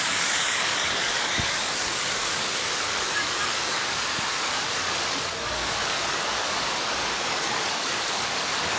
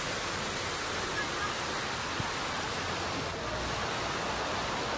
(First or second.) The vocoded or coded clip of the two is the first